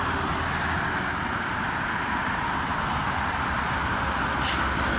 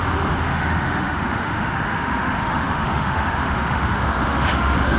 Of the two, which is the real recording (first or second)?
first